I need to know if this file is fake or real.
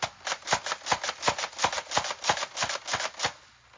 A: real